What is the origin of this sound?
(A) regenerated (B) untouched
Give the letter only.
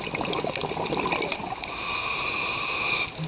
B